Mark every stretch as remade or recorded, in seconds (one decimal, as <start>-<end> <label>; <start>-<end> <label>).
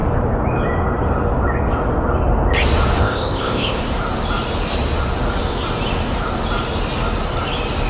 0.0-3.0 recorded; 3.0-3.8 remade; 3.8-7.9 recorded